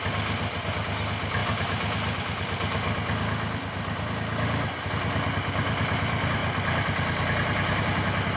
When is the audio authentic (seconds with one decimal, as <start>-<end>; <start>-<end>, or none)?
0.0-8.4